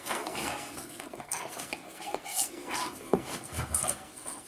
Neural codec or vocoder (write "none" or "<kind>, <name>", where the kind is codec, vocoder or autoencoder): codec, SNAC